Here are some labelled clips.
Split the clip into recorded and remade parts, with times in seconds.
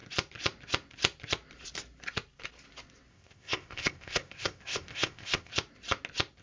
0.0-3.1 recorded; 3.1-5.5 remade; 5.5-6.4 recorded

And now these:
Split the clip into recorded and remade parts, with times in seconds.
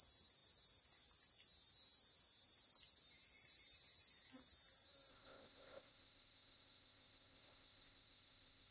0.0-5.1 recorded; 5.1-8.7 remade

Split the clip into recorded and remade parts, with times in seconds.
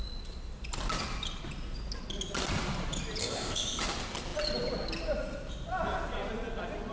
0.0-3.2 recorded; 3.2-3.8 remade; 3.8-6.9 recorded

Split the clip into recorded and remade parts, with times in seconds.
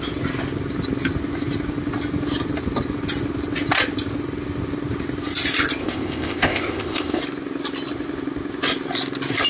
0.0-5.8 recorded; 5.8-7.2 remade; 7.2-9.5 recorded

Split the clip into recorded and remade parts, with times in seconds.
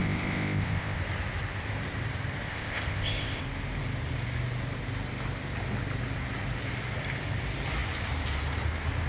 0.0-1.0 remade; 1.0-2.5 recorded; 2.5-3.4 remade; 3.4-9.1 recorded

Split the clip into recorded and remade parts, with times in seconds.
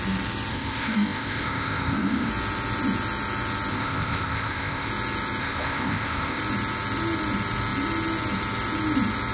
0.0-0.5 recorded; 0.5-2.3 remade; 2.3-3.7 recorded; 3.7-4.9 remade; 4.9-5.4 recorded; 5.4-6.4 remade; 6.4-9.3 recorded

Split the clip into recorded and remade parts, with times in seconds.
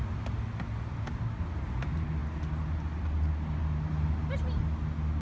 0.0-5.2 recorded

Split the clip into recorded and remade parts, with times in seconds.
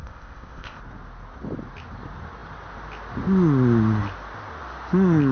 0.0-0.8 remade; 0.8-5.3 recorded